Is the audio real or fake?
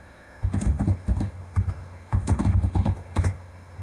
fake